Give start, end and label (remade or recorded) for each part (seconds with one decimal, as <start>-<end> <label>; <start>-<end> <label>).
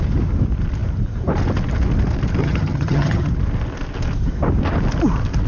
0.0-2.4 recorded; 2.4-3.3 remade; 3.3-5.5 recorded